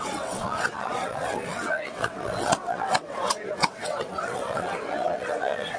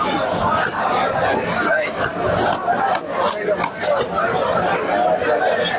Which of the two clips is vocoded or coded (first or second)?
first